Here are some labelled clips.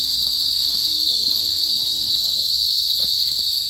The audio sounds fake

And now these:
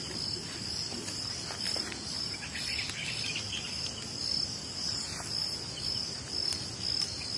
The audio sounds real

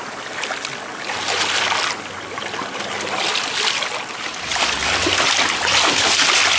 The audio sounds real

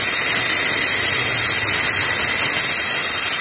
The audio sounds real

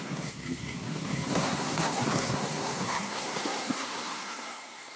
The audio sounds fake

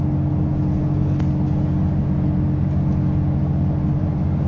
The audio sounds real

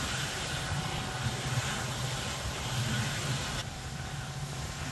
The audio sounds real